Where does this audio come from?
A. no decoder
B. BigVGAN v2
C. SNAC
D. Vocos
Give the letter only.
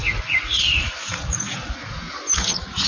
D